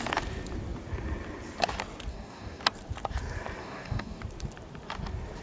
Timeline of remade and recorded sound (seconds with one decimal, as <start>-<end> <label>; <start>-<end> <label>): 0.0-2.1 recorded; 2.1-2.6 remade; 2.6-3.6 recorded; 3.6-4.2 remade; 4.2-5.4 recorded